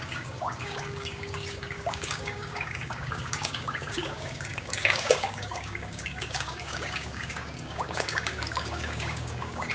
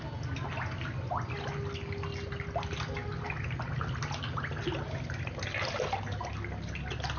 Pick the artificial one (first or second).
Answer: first